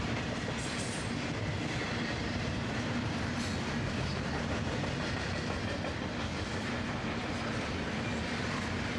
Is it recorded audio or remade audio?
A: remade